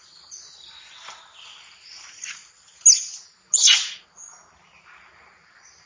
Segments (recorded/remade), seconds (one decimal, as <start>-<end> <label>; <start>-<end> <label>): 0.0-5.9 recorded